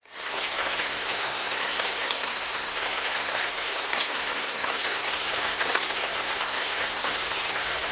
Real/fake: fake